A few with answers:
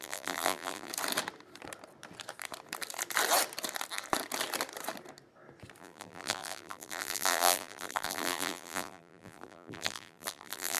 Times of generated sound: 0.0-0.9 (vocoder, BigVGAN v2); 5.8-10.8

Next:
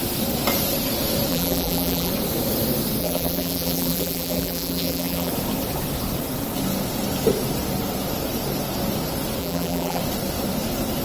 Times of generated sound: 1.3-2.1 (vocoder, BigVGAN v2); 3.0-5.3; 9.4-10.0

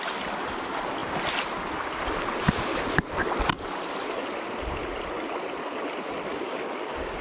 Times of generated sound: 6.3-7.2 (codec, DAC)

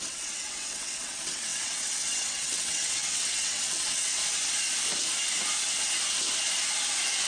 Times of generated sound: 0.0-4.2 (vocoder, WaveNeXt)

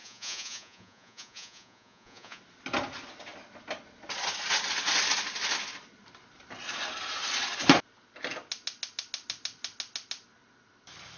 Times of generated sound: 0.0-2.4 (vocoder, Vocos)

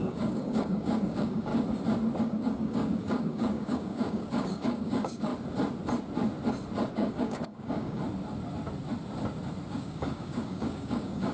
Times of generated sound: 0.0-1.5 (codec, DAC); 2.2-5.3; 6.9-8.0; 9.7-11.3

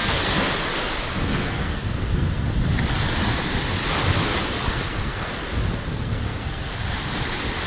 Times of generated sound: 0.0-0.5 (codec, SNAC); 1.2-2.5; 4.7-5.3; 5.9-6.7